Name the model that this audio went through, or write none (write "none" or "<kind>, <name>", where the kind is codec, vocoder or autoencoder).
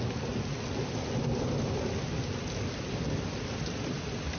none